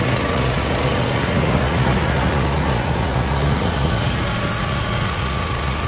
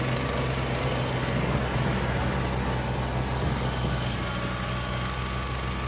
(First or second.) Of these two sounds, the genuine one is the second